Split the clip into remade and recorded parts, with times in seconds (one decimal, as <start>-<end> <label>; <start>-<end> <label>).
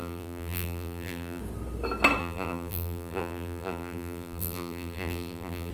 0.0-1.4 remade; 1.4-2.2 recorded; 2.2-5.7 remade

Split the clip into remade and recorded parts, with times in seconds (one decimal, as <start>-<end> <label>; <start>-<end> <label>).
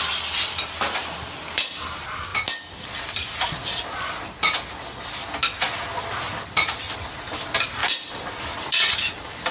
0.0-2.3 remade; 2.3-6.2 recorded; 6.2-7.8 remade; 7.8-8.4 recorded; 8.4-9.5 remade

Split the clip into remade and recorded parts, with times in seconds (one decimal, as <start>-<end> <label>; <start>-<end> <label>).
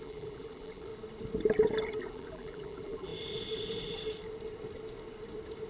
0.0-0.9 remade; 0.9-2.1 recorded; 2.1-3.1 remade; 3.1-5.7 recorded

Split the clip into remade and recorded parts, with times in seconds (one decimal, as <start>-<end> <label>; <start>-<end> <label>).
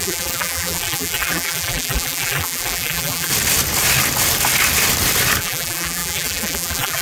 0.0-3.3 remade; 3.3-5.4 recorded; 5.4-7.0 remade